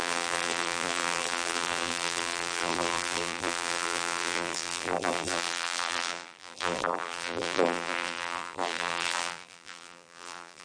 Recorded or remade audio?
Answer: remade